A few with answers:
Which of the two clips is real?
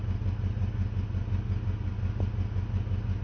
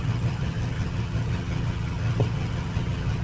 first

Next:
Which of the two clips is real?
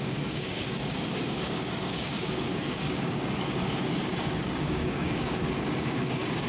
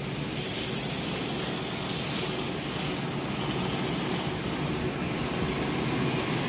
second